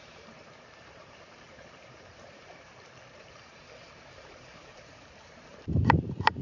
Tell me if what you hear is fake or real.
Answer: fake